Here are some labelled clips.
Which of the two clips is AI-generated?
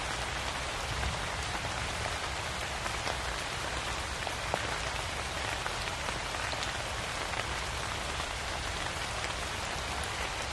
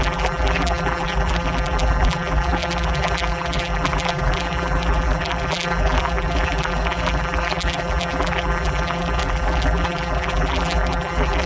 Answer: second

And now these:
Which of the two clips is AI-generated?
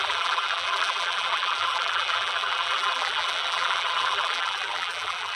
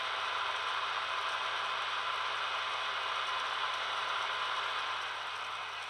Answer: first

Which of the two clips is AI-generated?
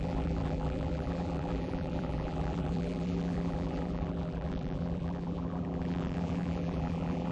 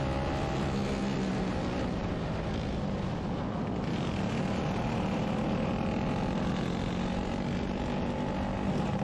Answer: first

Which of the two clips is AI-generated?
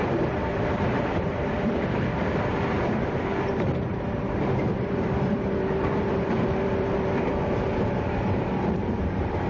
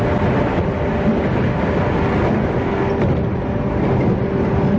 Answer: first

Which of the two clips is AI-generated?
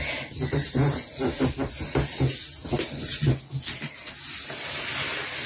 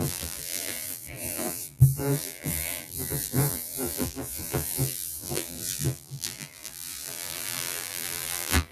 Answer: second